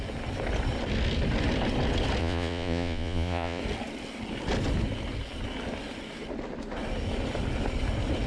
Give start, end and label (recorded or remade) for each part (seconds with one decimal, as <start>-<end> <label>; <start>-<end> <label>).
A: 0.0-2.2 recorded; 2.2-3.6 remade; 3.6-8.3 recorded